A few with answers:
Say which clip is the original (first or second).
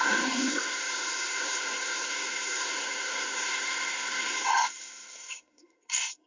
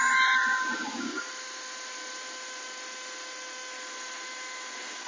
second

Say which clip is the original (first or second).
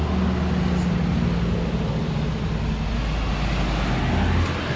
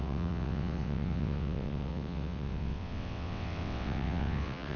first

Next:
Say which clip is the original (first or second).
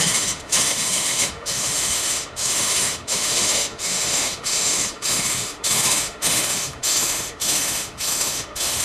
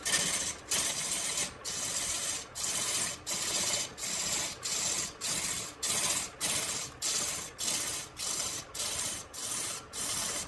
second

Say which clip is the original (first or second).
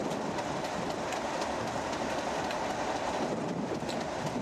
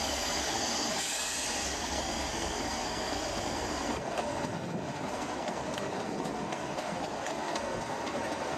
first